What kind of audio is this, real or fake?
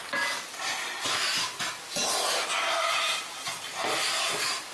real